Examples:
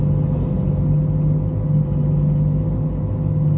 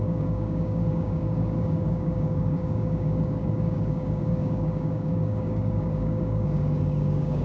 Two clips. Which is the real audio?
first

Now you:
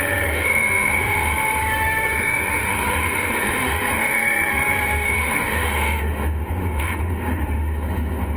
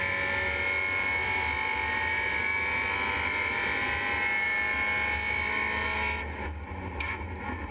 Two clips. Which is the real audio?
second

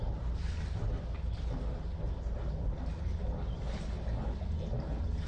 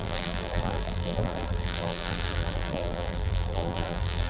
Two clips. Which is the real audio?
first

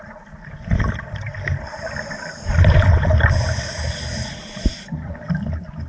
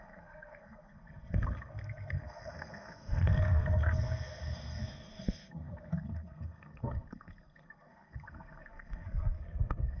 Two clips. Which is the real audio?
first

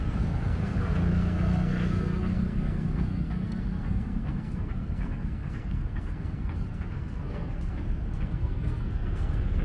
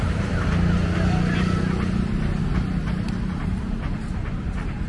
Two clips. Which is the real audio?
second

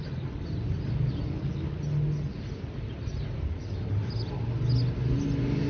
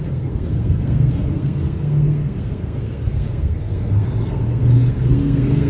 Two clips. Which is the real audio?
first